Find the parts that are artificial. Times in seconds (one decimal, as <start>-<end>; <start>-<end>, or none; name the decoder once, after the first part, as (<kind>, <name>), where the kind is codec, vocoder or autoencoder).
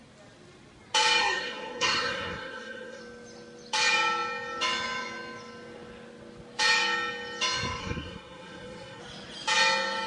1.2-3.0 (codec, SNAC); 7.8-9.0